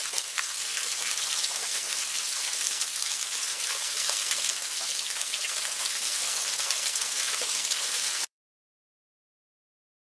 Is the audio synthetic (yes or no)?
yes